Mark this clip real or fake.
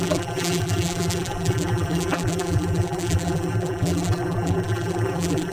fake